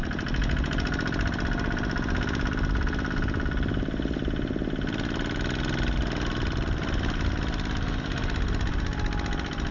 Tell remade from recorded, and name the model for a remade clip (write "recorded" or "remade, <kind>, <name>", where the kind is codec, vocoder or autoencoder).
recorded